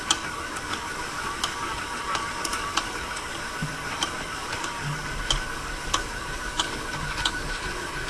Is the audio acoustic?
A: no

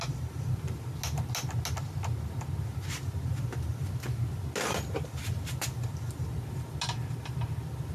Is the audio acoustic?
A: yes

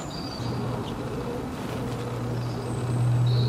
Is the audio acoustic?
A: yes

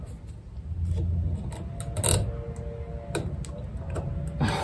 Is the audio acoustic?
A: yes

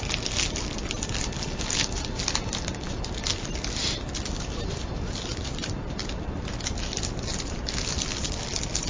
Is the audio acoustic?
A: yes